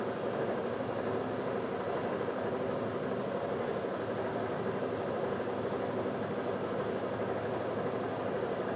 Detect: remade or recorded recorded